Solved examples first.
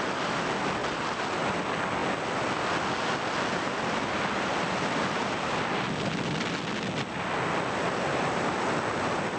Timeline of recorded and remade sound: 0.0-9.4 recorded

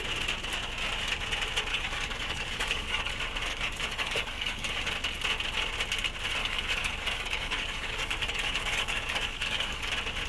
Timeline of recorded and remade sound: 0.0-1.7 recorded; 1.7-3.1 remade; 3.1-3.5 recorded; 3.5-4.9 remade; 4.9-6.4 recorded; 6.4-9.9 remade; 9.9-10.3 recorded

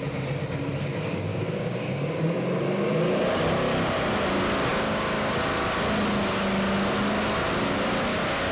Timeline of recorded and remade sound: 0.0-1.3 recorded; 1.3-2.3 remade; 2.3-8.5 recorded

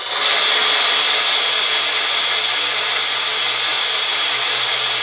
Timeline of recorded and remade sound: 0.0-5.0 recorded

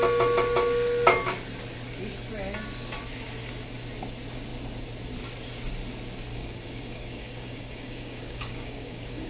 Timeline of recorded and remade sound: 0.0-6.3 recorded; 6.3-9.3 remade

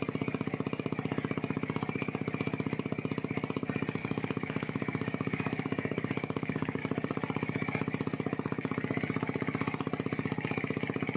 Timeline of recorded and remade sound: 0.0-4.0 recorded; 4.0-6.8 remade; 6.8-11.2 recorded

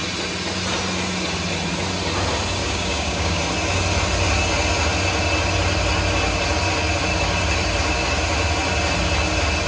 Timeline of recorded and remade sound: 0.0-2.6 recorded; 2.6-3.4 remade; 3.4-9.7 recorded

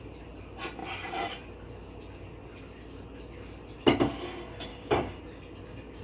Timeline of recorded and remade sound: 0.0-4.7 recorded; 4.7-5.2 remade; 5.2-6.0 recorded